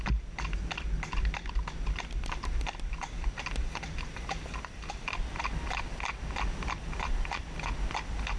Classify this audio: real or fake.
real